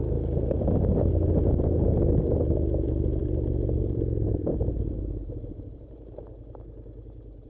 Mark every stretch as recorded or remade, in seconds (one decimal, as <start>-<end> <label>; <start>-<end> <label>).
0.0-3.2 recorded; 3.2-4.6 remade; 4.6-7.5 recorded